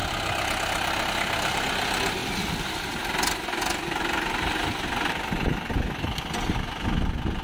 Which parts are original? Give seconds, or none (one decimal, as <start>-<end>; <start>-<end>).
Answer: 0.0-7.4